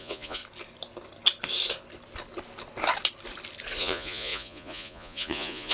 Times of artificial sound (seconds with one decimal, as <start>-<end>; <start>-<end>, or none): 0.0-0.4; 3.8-5.7